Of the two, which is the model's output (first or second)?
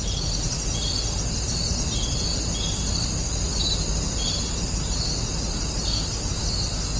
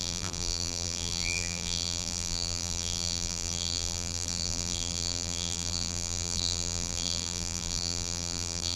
second